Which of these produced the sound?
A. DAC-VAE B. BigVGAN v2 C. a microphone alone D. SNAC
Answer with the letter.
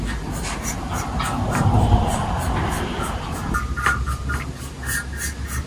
C